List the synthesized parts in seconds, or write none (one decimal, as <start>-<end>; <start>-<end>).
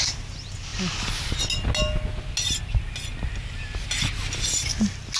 none